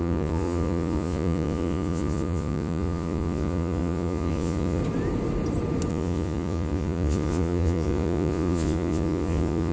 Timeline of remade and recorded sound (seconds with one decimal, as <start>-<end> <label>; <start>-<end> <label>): 0.0-4.8 remade; 4.8-5.9 recorded; 5.9-9.7 remade